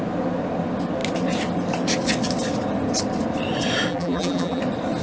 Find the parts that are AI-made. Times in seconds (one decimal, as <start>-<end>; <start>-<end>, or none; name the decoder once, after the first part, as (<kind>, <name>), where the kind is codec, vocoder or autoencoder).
3.9-4.6 (vocoder, BigVGAN v2)